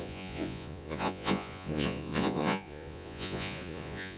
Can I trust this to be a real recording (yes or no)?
no